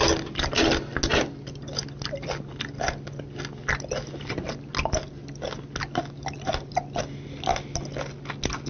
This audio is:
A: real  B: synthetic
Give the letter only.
A